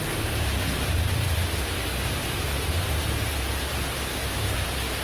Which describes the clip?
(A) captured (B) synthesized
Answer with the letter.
B